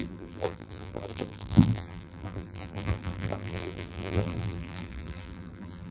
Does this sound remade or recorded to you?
remade